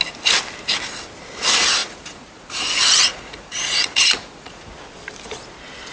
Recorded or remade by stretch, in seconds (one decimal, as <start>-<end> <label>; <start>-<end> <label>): 0.0-1.8 recorded; 1.8-2.6 remade; 2.6-3.1 recorded; 3.1-4.7 remade; 4.7-5.9 recorded